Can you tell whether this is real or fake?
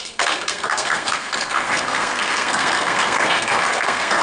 fake